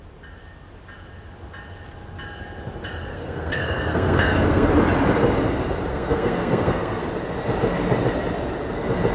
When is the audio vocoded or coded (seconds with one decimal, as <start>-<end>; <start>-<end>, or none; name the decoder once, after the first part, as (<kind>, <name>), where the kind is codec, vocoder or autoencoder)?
3.1-4.7 (codec, SNAC); 5.9-7.1